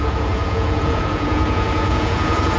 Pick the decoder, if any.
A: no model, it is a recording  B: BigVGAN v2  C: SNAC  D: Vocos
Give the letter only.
D